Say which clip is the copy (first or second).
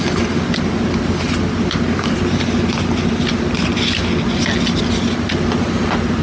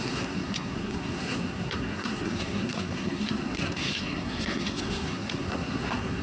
second